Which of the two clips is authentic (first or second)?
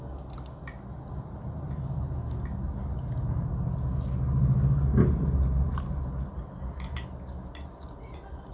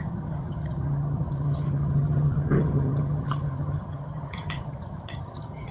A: first